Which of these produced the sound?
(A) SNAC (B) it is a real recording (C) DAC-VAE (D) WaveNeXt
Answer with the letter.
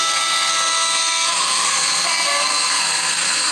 A